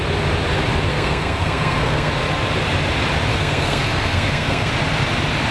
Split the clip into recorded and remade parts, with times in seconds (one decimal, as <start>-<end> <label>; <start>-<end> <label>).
0.0-0.9 recorded; 0.9-2.1 remade; 2.1-3.3 recorded; 3.3-4.7 remade; 4.7-5.5 recorded